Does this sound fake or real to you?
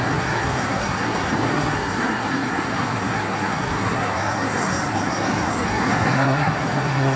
fake